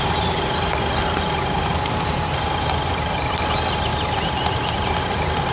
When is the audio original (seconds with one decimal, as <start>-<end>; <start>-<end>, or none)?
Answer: none